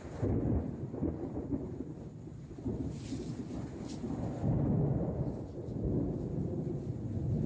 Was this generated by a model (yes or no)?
no